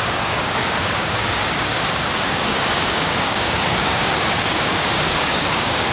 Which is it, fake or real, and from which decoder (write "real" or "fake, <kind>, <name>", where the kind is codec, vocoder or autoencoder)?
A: fake, codec, DAC